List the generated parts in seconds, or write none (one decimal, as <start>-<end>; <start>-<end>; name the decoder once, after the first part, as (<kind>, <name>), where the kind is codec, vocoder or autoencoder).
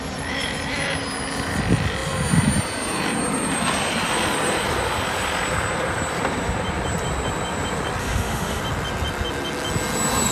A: 8.0-8.6 (autoencoder, DAC-VAE)